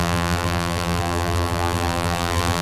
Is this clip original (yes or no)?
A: no